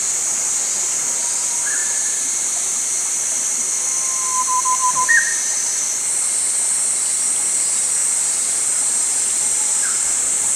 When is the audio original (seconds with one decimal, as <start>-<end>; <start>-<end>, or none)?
0.0-1.8; 2.3-4.8; 5.8-8.0